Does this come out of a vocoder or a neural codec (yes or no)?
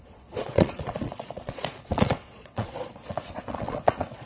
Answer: yes